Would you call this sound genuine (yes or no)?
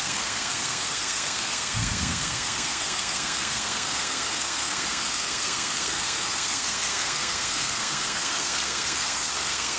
no